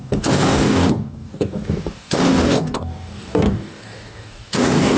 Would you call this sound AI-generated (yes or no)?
yes